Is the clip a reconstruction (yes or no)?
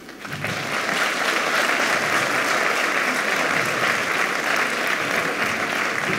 no